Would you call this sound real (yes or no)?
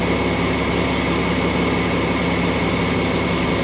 yes